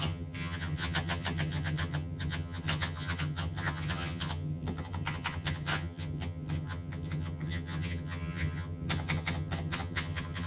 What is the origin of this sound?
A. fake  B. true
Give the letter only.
A